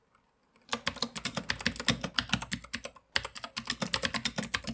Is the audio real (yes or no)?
yes